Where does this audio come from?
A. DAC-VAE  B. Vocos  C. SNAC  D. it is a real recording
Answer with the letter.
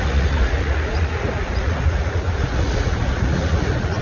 B